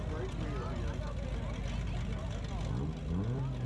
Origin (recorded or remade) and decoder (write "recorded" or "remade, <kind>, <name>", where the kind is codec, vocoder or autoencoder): recorded